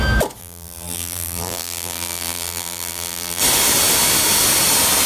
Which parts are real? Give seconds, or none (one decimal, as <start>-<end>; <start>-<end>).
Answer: 0.0-0.4; 3.4-5.1